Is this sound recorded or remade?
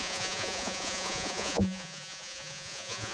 remade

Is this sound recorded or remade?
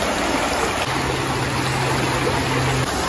recorded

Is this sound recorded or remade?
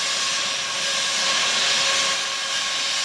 recorded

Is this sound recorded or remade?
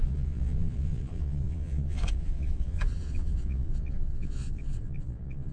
remade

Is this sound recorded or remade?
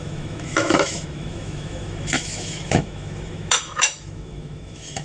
remade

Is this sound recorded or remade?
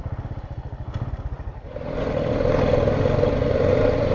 recorded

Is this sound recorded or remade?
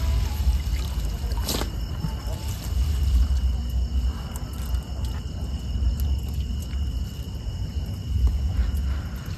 recorded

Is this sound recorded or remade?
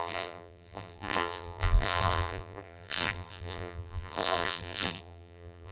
remade